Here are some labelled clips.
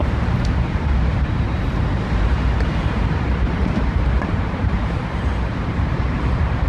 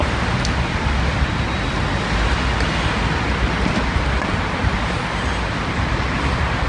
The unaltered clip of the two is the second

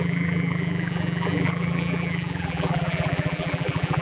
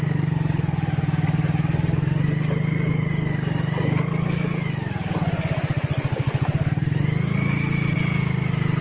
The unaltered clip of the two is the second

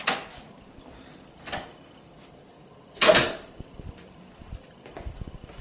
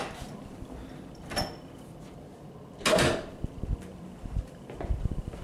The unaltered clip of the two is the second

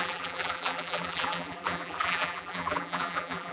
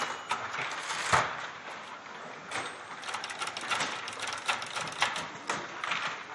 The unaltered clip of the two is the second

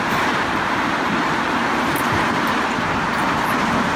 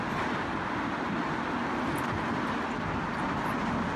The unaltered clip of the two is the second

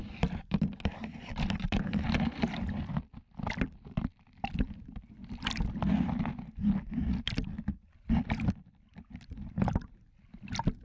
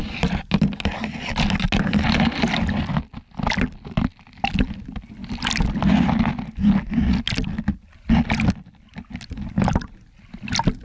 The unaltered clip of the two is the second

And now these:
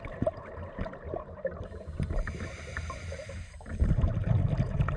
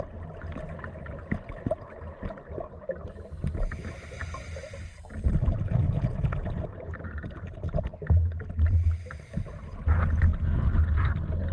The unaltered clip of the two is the second